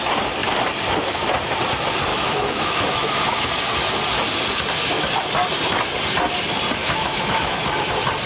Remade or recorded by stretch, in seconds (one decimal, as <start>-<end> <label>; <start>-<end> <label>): 0.0-2.1 recorded; 2.1-3.5 remade; 3.5-6.8 recorded; 6.8-7.6 remade; 7.6-8.3 recorded